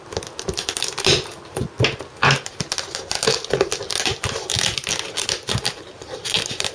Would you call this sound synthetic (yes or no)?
no